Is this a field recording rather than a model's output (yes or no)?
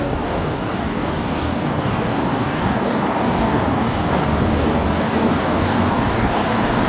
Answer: no